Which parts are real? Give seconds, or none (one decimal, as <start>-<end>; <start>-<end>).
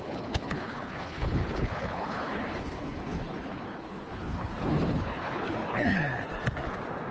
6.3-7.1